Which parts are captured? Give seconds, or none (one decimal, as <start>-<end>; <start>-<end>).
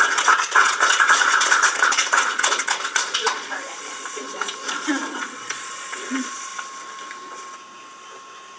6.5-8.6